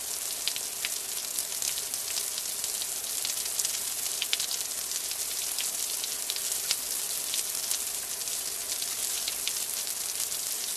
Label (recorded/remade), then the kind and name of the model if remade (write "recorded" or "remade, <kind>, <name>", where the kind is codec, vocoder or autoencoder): recorded